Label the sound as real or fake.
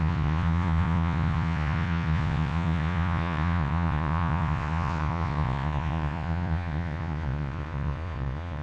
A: fake